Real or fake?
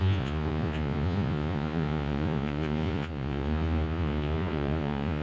fake